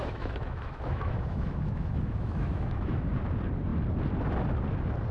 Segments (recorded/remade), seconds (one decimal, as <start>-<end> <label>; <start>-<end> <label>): 0.0-3.1 remade; 3.1-5.1 recorded